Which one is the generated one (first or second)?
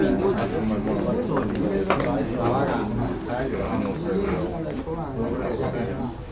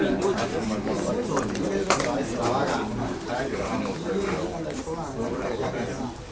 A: second